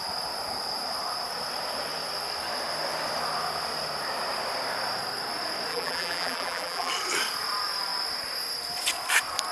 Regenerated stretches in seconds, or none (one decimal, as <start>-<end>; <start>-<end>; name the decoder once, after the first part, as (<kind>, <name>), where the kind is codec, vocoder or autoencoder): 5.7-6.9 (vocoder, BigVGAN v2)